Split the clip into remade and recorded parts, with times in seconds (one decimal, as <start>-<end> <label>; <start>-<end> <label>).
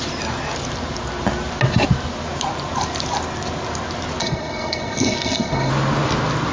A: 0.0-4.2 recorded; 4.2-5.7 remade; 5.7-6.5 recorded